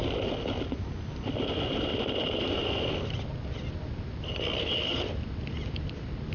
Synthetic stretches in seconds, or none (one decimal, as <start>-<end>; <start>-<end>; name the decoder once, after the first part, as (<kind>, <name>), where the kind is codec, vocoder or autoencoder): none